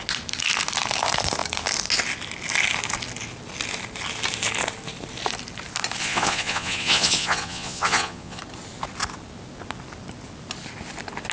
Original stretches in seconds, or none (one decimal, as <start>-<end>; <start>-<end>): 0.0-6.0; 8.4-11.3